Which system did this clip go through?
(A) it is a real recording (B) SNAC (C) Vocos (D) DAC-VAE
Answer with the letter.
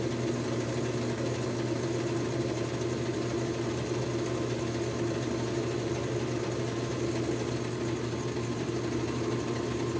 A